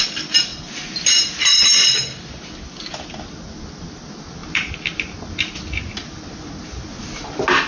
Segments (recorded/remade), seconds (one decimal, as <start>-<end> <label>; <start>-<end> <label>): 0.0-7.7 recorded